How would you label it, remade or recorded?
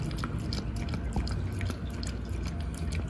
recorded